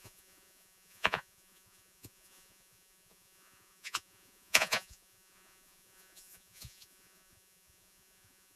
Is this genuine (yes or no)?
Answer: no